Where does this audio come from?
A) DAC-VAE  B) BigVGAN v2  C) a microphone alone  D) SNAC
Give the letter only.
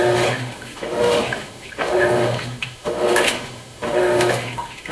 A